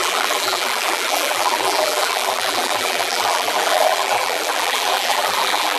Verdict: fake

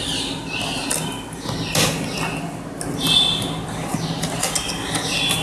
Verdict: real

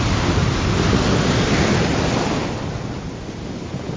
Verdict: real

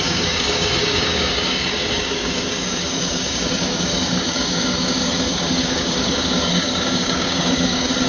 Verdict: fake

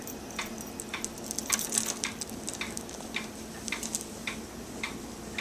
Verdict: real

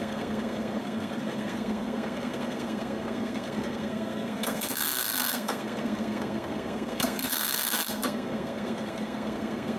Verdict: fake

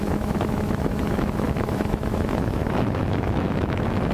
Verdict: fake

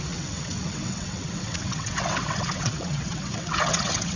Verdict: fake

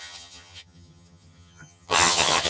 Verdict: fake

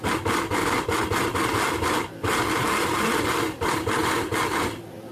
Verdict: real